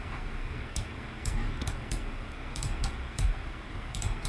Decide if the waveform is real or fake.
fake